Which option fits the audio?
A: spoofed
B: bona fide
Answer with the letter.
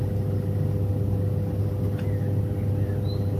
B